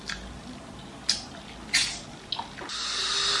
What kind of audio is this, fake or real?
real